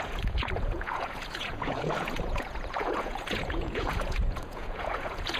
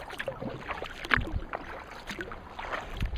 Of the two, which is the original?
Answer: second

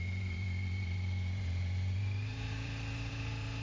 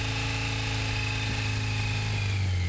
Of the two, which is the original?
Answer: second